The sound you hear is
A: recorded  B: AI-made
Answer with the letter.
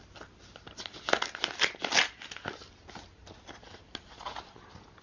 A